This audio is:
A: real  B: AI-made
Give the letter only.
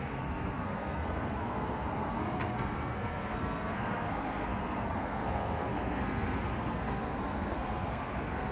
B